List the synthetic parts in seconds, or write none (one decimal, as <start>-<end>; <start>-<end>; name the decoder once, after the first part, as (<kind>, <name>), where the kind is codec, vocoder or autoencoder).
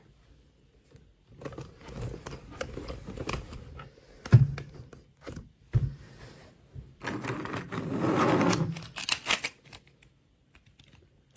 none